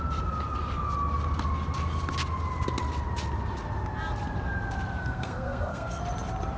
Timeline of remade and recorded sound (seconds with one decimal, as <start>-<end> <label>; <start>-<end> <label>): 0.0-5.0 recorded; 5.0-6.0 remade; 6.0-6.6 recorded